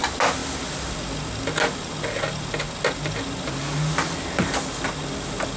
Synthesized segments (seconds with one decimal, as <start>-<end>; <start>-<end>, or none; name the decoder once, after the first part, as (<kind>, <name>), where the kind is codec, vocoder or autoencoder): none